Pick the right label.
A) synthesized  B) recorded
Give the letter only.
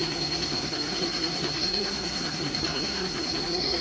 A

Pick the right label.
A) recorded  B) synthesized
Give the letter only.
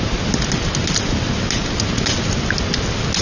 A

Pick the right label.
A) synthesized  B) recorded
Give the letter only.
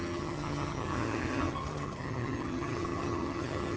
A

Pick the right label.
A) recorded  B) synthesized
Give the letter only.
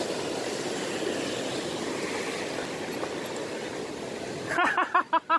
A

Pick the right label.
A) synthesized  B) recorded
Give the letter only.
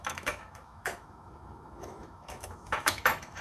A